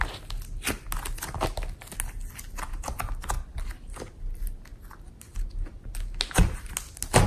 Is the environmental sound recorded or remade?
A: recorded